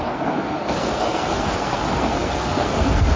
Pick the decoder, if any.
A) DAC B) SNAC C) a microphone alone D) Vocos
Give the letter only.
B